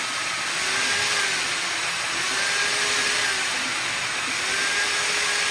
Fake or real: real